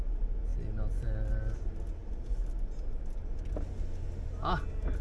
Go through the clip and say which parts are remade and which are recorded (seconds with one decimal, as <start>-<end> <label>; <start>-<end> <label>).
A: 0.0-5.0 recorded